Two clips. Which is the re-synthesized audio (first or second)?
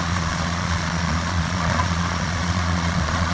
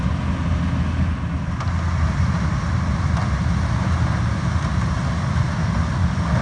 first